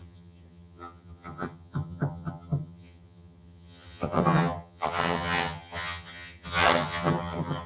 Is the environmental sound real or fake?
fake